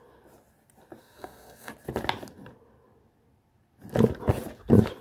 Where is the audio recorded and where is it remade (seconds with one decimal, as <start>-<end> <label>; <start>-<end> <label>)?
0.0-1.0 recorded; 1.0-1.7 remade; 1.7-5.0 recorded